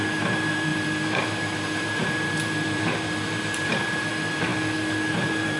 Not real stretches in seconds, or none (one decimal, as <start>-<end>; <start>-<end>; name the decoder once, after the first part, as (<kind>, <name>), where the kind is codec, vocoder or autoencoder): 0.0-4.5 (vocoder, BigVGAN v2); 5.1-5.6